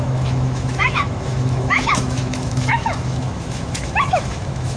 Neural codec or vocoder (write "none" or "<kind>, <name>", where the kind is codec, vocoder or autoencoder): autoencoder, DAC-VAE